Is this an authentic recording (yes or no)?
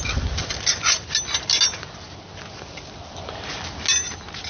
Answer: yes